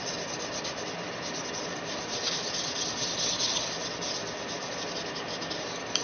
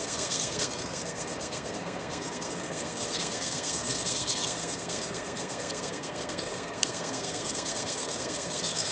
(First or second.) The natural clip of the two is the first